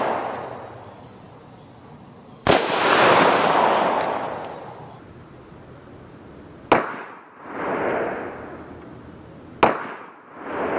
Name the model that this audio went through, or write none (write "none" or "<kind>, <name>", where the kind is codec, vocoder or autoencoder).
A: none